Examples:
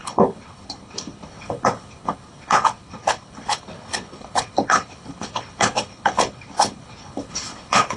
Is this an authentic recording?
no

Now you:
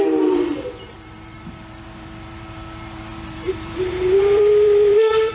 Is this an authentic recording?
no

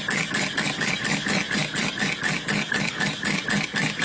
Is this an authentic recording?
yes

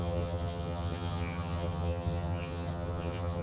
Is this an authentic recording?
no